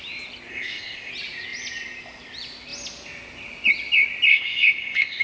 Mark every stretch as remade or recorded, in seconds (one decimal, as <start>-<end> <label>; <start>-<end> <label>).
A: 0.0-0.5 recorded; 0.5-1.1 remade; 1.1-4.3 recorded; 4.3-5.2 remade